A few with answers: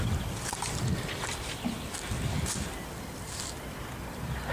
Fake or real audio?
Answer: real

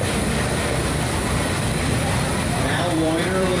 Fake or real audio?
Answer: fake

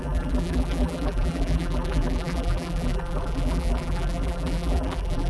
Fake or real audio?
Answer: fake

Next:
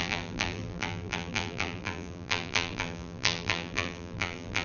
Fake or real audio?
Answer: fake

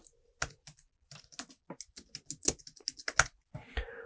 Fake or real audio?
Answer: real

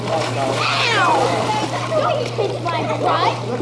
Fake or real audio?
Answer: real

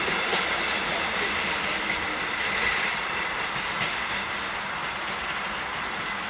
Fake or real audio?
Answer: real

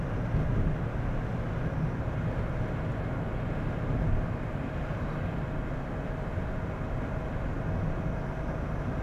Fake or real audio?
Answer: real